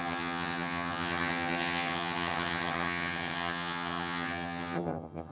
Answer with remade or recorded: remade